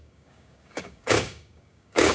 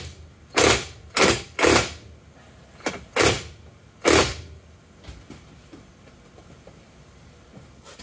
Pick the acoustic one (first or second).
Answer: second